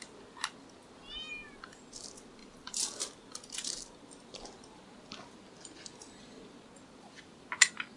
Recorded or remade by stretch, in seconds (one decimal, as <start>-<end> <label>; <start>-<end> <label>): 0.0-2.4 recorded; 2.4-3.7 remade; 3.7-8.0 recorded